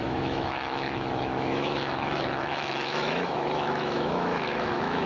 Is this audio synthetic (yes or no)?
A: yes